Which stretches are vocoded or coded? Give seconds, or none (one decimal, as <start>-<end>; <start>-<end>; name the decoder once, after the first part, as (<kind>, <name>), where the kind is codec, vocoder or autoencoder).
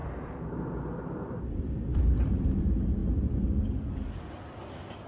none